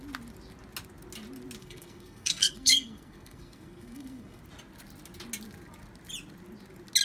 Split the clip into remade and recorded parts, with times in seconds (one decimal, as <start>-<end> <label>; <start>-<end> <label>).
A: 0.0-1.6 recorded; 1.6-4.4 remade; 4.4-7.0 recorded